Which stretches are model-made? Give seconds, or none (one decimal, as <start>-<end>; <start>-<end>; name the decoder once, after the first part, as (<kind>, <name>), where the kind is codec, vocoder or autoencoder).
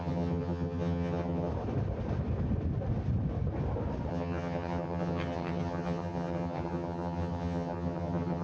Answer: 0.0-1.5 (vocoder, HiFi-GAN); 4.1-8.4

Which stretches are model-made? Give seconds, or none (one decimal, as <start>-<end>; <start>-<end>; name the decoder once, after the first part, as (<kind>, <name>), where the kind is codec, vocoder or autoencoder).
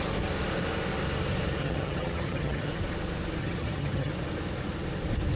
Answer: 1.6-2.7 (vocoder, HiFi-GAN); 3.4-4.1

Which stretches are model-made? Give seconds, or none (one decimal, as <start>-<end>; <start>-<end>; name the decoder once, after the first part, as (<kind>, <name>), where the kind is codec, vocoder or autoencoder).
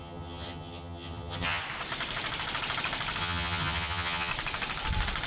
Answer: 0.0-1.6 (vocoder, HiFi-GAN); 3.2-4.3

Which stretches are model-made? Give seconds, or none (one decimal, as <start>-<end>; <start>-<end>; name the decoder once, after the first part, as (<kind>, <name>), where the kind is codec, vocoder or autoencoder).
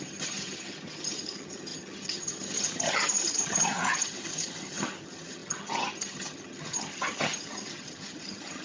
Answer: 0.0-8.6 (vocoder, HiFi-GAN)